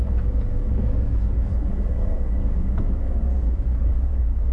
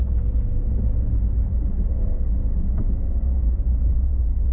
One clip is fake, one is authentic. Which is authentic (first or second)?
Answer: second